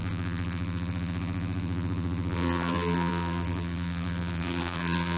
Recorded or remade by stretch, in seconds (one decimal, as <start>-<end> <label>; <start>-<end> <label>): 0.0-5.2 remade